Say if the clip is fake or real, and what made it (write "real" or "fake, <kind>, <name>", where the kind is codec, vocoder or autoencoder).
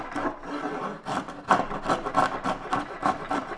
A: real